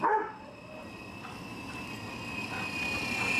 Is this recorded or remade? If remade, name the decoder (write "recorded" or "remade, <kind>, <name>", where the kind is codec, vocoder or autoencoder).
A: recorded